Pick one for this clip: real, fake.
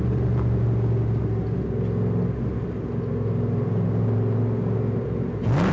real